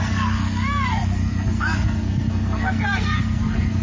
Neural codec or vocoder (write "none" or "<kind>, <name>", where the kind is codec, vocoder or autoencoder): codec, SNAC